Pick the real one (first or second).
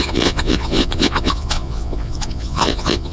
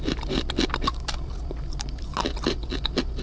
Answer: second